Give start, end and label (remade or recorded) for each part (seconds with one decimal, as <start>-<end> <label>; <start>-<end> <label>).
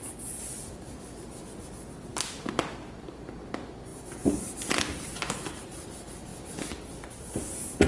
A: 0.0-7.9 recorded